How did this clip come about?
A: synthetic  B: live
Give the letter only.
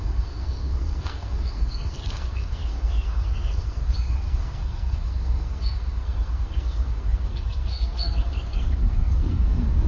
A